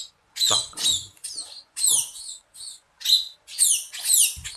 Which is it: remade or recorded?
remade